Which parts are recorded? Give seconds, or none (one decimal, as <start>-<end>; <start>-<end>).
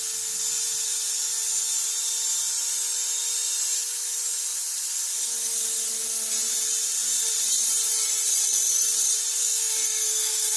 0.0-9.4